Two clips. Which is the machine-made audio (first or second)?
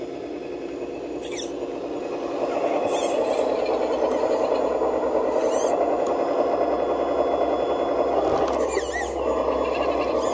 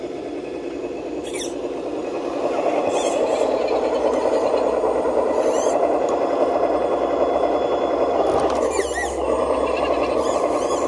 second